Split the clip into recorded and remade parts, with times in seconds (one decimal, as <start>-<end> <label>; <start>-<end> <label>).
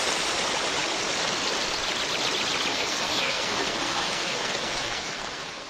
0.0-2.7 recorded; 2.7-5.7 remade